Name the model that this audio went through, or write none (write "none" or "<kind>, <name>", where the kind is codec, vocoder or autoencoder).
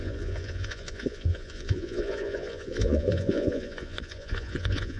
vocoder, Vocos